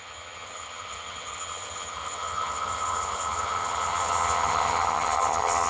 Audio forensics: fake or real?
fake